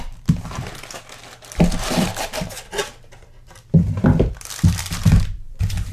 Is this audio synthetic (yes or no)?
yes